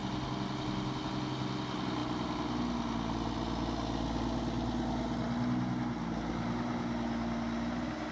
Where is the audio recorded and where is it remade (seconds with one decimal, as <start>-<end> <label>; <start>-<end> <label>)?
0.0-8.1 recorded